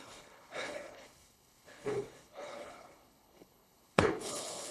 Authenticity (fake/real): fake